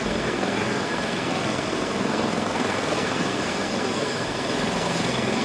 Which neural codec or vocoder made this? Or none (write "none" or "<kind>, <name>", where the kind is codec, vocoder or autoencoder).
codec, SNAC